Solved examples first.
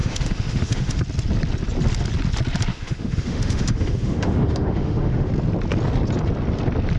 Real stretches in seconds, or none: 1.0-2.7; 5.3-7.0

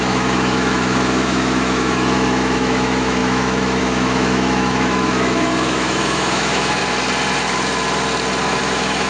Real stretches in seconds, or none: 6.8-8.6